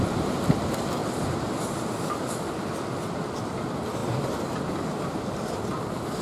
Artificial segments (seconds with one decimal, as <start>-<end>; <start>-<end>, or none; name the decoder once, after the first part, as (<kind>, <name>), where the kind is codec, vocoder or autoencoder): none